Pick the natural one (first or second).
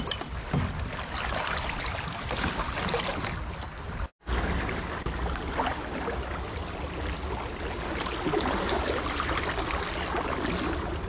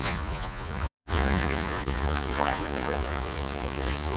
first